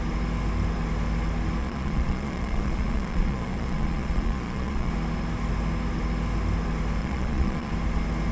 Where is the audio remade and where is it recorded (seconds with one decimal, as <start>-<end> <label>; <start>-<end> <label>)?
0.0-1.6 recorded; 1.6-4.9 remade; 4.9-7.0 recorded; 7.0-7.7 remade; 7.7-8.3 recorded